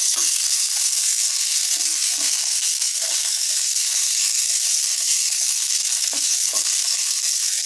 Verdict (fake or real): fake